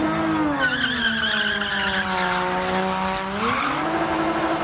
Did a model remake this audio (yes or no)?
no